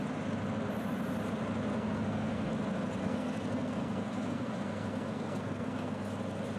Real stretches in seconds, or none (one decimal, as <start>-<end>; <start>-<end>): 0.0-1.7; 2.5-3.0; 6.1-6.6